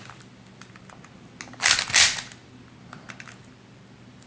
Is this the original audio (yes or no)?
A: yes